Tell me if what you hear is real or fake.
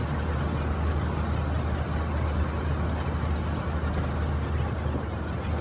real